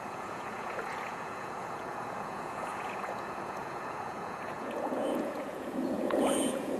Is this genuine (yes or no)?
no